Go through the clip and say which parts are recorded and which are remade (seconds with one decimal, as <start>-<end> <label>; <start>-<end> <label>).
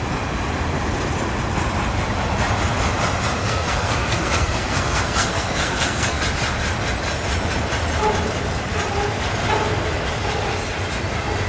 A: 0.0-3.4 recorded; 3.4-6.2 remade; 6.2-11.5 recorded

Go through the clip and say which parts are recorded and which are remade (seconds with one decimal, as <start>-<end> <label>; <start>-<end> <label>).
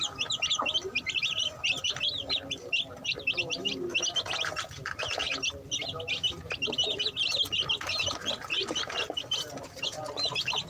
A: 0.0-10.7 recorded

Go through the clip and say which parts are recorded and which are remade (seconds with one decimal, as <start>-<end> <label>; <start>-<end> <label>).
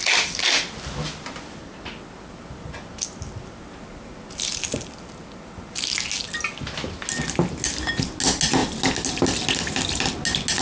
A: 0.0-10.6 recorded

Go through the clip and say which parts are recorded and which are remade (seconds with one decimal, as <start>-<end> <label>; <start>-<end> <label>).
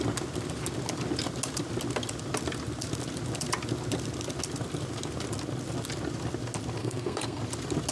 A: 0.0-6.8 recorded; 6.8-7.4 remade; 7.4-7.9 recorded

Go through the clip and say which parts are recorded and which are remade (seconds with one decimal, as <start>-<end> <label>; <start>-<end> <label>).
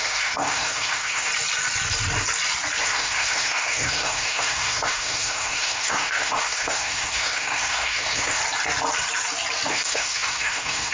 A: 0.0-1.3 remade; 1.3-2.8 recorded; 2.8-8.4 remade; 8.4-9.7 recorded; 9.7-10.9 remade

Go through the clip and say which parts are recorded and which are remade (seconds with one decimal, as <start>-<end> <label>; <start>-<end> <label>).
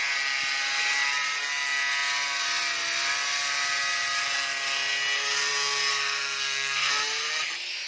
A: 0.0-5.9 recorded; 5.9-6.9 remade; 6.9-7.9 recorded